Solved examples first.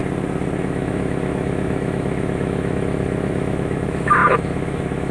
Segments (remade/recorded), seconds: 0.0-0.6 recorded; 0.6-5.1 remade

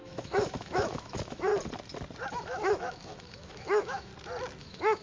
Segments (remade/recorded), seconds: 0.0-1.5 remade; 1.5-2.3 recorded; 2.3-4.1 remade; 4.1-4.6 recorded; 4.6-5.0 remade

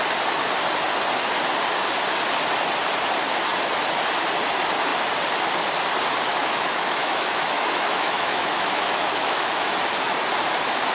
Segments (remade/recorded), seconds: 0.0-6.4 recorded; 6.4-9.7 remade; 9.7-10.9 recorded

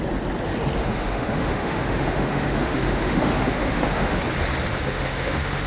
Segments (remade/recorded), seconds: 0.0-0.8 recorded; 0.8-4.2 remade; 4.2-4.7 recorded; 4.7-5.7 remade

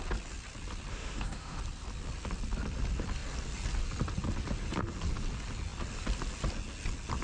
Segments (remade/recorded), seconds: 0.0-0.9 recorded; 0.9-1.6 remade; 1.6-7.2 recorded